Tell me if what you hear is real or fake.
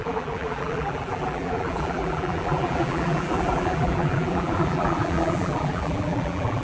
fake